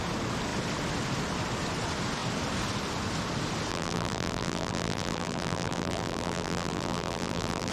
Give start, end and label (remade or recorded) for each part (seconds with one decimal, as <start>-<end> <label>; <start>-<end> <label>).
0.0-3.7 recorded; 3.7-7.7 remade